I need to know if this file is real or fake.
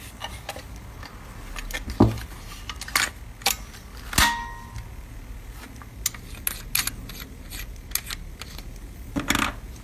real